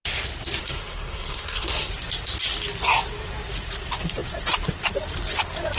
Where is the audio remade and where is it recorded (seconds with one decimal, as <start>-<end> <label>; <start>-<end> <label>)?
0.0-0.6 recorded; 0.6-1.9 remade; 1.9-5.8 recorded